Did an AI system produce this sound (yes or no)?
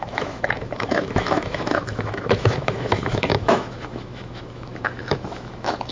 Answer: yes